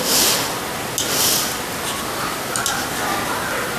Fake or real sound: real